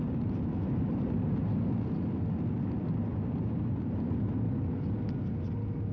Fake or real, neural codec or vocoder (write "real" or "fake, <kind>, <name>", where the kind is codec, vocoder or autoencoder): real